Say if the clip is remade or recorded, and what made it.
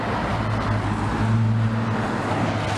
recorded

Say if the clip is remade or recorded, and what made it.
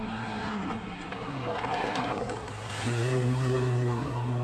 remade, codec, SNAC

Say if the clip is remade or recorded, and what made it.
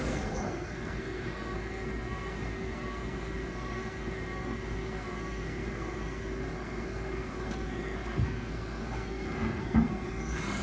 remade, codec, SNAC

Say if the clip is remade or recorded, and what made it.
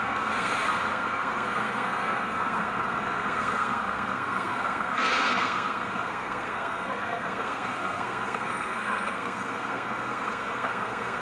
remade, codec, SNAC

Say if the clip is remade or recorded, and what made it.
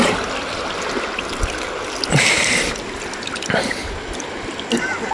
recorded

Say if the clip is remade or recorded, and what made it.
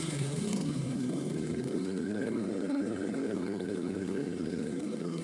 remade, codec, SNAC